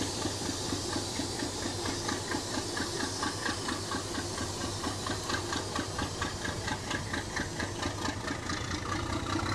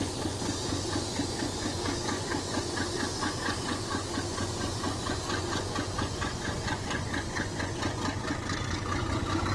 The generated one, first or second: second